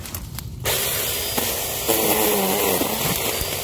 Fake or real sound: real